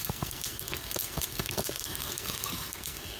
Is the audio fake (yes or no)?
yes